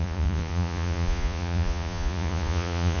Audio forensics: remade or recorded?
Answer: remade